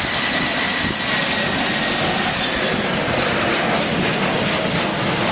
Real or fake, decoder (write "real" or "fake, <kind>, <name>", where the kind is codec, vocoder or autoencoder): real